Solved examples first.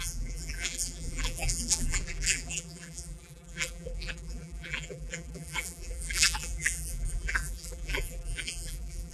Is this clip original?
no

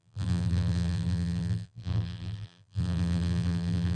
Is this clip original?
no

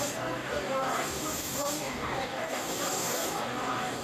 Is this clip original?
no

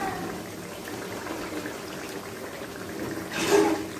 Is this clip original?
yes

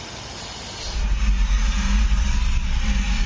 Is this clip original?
yes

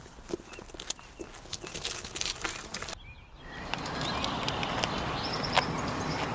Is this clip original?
yes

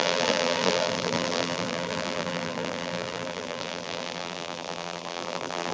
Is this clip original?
no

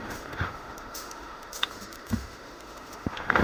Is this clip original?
no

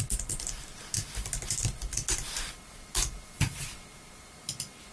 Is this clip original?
yes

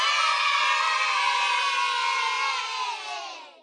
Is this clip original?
yes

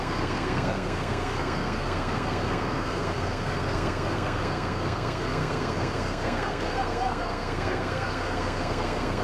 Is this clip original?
no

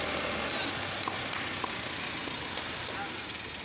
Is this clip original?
yes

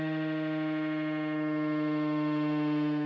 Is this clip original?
yes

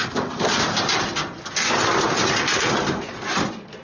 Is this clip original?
yes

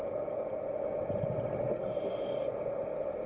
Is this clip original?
yes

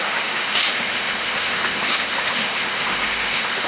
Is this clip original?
no